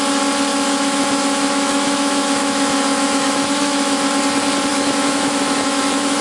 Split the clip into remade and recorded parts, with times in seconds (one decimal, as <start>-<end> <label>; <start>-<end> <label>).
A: 0.0-0.5 recorded; 0.5-4.2 remade; 4.2-4.7 recorded; 4.7-6.2 remade